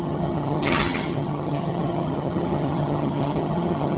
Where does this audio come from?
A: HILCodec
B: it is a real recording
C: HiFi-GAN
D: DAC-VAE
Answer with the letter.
C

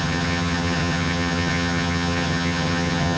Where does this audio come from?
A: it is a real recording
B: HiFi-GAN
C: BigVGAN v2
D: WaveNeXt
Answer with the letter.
B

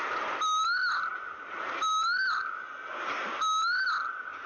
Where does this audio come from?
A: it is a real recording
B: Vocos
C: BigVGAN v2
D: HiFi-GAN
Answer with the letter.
A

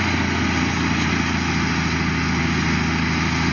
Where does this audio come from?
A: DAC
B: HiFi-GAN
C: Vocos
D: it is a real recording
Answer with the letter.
D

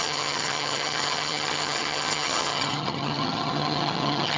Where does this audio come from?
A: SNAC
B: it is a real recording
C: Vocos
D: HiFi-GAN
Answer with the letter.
D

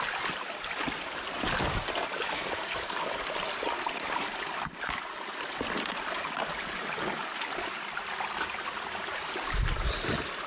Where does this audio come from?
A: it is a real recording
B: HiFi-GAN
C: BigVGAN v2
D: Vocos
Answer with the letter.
A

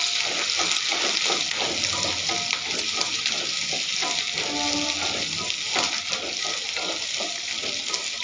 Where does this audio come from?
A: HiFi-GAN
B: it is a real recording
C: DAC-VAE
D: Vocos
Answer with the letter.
B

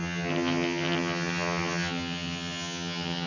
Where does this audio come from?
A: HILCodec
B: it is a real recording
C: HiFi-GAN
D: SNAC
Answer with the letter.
C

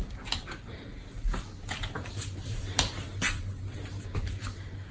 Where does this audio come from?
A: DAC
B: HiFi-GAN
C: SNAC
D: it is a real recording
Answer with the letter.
D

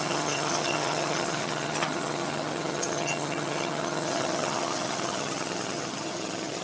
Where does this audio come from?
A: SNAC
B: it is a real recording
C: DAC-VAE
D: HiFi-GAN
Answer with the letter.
D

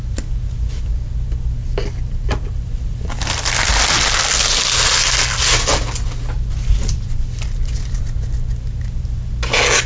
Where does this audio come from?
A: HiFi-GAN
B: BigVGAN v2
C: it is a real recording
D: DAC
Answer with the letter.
C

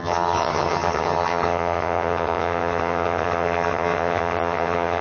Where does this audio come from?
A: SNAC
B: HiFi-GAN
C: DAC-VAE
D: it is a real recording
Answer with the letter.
B